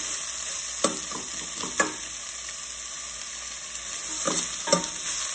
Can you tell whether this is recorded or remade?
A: recorded